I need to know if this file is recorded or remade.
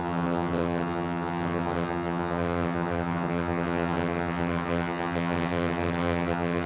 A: remade